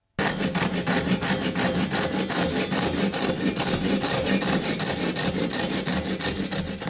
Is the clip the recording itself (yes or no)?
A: yes